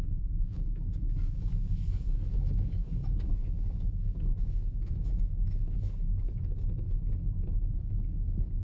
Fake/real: fake